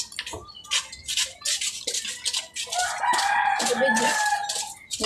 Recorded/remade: recorded